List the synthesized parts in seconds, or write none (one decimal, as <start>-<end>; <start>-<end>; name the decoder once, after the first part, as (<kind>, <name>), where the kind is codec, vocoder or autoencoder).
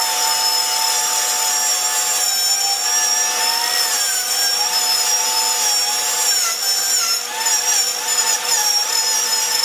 7.9-8.9 (vocoder, BigVGAN v2)